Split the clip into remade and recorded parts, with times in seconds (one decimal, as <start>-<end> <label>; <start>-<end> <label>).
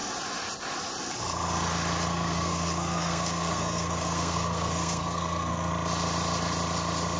0.0-2.1 recorded; 2.1-5.7 remade; 5.7-7.2 recorded